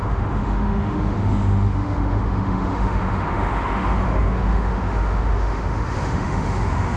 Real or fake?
fake